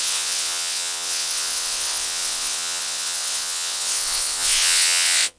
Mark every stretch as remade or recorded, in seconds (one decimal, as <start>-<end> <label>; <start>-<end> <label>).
0.0-5.4 remade